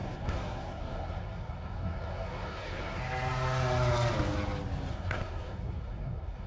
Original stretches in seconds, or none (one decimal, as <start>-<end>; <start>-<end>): 3.0-4.9